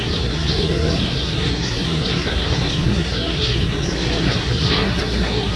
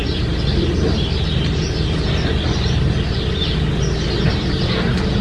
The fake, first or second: first